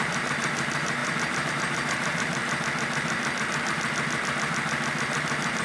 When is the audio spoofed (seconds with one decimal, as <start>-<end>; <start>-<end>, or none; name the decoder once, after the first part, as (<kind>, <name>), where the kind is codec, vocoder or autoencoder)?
0.0-2.4 (vocoder, BigVGAN v2)